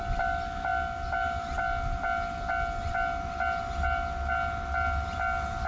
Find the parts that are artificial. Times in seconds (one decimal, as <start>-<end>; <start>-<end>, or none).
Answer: none